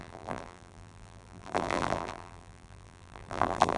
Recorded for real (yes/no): no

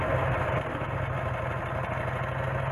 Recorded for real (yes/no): yes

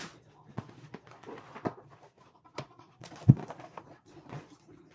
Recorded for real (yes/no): no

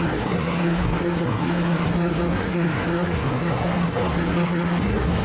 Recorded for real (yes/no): no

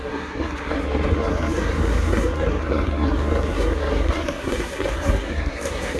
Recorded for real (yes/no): no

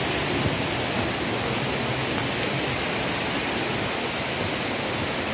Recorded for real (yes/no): yes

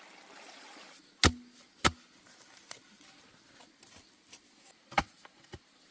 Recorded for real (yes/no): yes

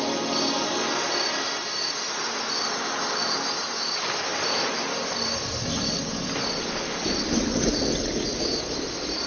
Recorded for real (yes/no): yes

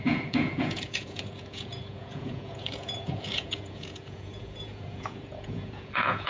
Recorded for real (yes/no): no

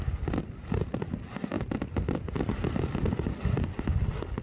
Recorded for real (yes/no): yes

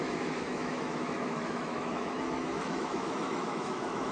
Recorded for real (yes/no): no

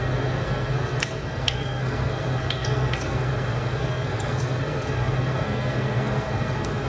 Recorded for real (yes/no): no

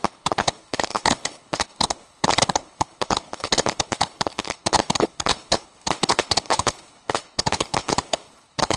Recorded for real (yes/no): no